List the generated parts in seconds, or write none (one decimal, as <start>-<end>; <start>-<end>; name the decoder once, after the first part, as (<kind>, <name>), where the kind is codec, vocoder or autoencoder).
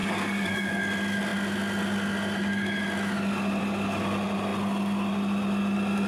0.0-0.8 (codec, DAC)